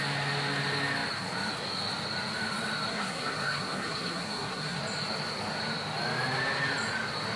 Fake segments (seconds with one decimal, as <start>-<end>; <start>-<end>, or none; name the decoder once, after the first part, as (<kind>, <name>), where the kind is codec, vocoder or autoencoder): 2.9-4.8 (codec, SNAC)